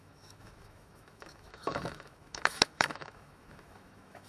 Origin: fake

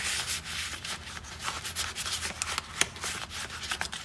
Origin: real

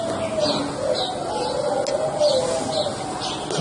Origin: real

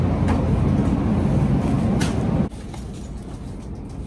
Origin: real